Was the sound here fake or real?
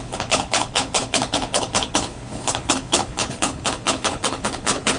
fake